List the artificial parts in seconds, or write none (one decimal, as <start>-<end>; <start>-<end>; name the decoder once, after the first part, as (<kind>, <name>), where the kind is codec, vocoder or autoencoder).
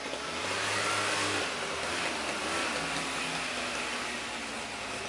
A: 0.4-0.9 (vocoder, BigVGAN v2)